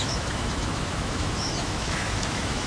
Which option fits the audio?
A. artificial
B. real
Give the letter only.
A